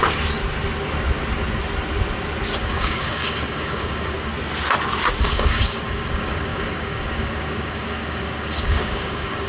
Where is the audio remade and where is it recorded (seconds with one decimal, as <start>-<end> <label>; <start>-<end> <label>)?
0.0-2.6 recorded; 2.6-4.3 remade; 4.3-5.2 recorded; 5.2-9.5 remade